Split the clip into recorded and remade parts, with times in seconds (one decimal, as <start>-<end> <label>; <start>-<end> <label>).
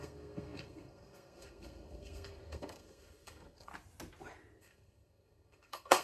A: 0.0-3.7 remade; 3.7-4.6 recorded; 4.6-6.0 remade